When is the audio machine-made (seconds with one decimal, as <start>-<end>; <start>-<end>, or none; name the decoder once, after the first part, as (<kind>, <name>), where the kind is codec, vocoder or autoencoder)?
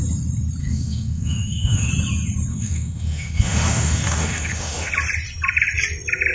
0.6-1.9 (autoencoder, DAC-VAE); 2.5-4.9